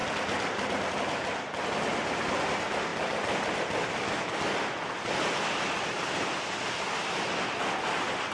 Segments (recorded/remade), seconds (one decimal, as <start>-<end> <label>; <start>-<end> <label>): 0.0-1.7 remade; 1.7-2.9 recorded; 2.9-4.0 remade; 4.0-4.8 recorded; 4.8-6.7 remade; 6.7-8.3 recorded